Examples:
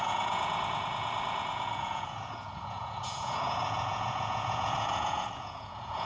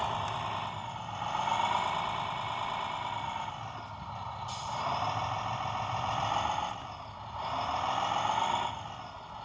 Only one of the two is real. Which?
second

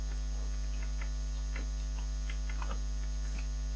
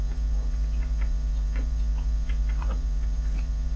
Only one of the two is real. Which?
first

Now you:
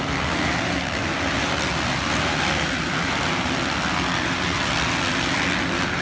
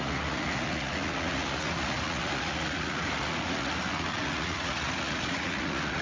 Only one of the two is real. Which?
first